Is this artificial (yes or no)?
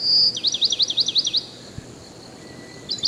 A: no